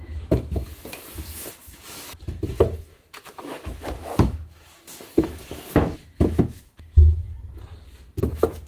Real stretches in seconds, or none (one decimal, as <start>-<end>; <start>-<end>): 7.3-8.2

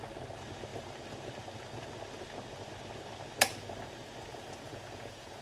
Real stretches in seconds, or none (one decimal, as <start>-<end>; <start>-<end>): 0.0-4.3

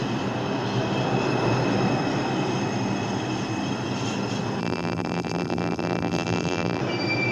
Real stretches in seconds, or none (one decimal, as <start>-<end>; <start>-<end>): 0.0-4.6; 6.8-7.3

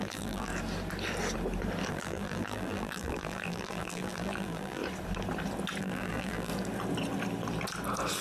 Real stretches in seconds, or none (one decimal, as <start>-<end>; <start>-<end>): 0.5-1.9; 4.8-5.8; 6.5-8.2

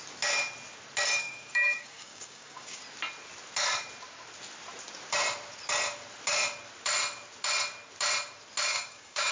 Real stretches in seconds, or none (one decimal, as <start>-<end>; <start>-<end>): 0.0-1.2; 2.8-8.7

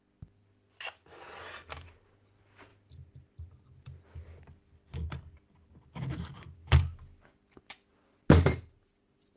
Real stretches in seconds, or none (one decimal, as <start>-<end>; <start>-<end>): 0.0-9.4